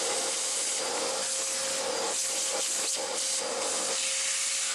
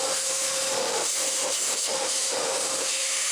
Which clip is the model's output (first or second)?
second